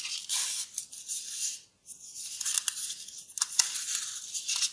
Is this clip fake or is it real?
real